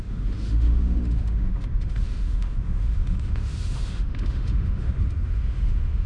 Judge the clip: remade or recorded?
remade